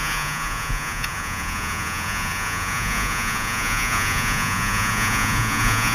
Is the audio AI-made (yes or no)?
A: yes